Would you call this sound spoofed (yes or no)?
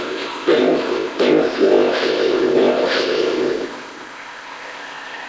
yes